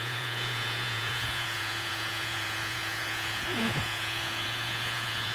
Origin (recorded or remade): remade